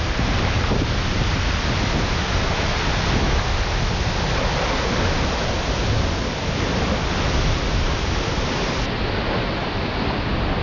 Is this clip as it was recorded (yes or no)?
yes